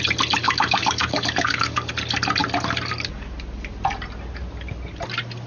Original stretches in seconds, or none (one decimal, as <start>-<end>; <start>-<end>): 0.0-0.4; 1.9-5.5